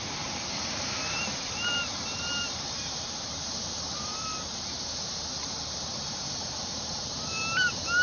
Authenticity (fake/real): fake